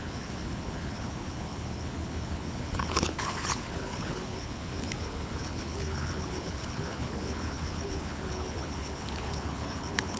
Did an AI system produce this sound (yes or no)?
yes